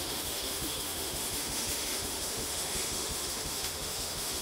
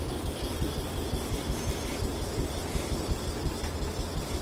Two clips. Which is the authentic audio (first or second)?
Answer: second